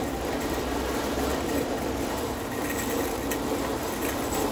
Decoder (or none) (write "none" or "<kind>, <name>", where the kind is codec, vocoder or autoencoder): none